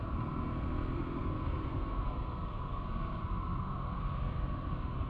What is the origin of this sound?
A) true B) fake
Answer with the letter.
B